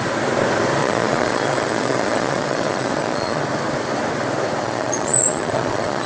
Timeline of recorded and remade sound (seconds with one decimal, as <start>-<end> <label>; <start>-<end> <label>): 0.0-0.8 recorded; 0.8-3.4 remade; 3.4-4.6 recorded; 4.6-6.1 remade